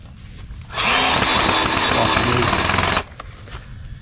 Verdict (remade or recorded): recorded